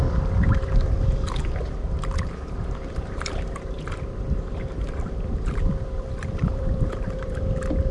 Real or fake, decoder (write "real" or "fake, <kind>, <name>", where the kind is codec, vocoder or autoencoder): fake, vocoder, BigVGAN v2